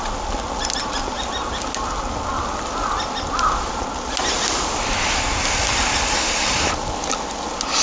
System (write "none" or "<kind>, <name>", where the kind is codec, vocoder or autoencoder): none